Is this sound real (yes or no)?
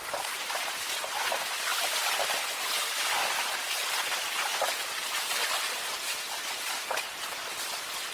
yes